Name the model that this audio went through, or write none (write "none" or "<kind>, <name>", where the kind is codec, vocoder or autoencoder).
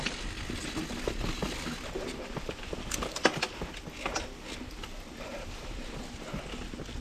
none